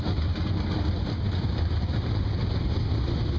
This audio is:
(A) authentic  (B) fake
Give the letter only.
B